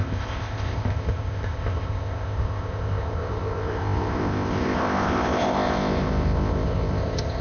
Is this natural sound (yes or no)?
no